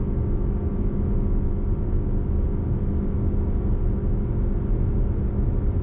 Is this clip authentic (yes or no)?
yes